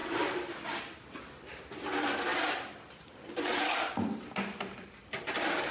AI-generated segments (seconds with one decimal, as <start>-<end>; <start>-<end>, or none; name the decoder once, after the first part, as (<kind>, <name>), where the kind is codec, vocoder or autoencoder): 0.0-0.8 (vocoder, BigVGAN v2); 2.3-5.1